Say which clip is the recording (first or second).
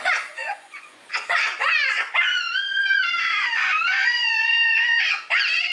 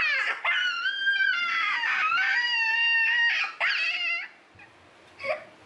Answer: second